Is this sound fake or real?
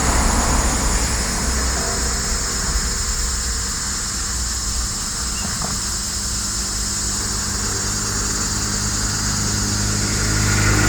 real